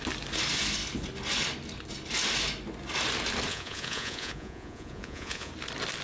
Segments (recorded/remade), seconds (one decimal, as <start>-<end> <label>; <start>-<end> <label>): 0.0-3.5 recorded; 3.5-5.5 remade; 5.5-6.0 recorded